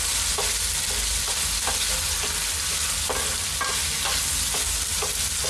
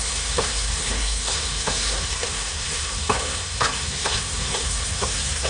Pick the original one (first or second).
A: first